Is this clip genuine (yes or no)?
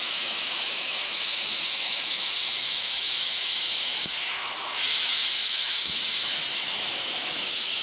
no